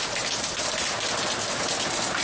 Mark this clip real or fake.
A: real